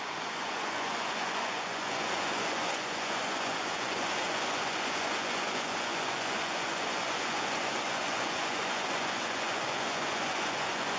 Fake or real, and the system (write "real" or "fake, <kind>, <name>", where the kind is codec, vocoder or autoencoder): fake, vocoder, Vocos